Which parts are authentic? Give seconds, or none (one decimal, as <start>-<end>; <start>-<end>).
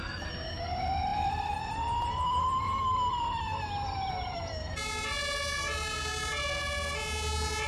0.0-7.7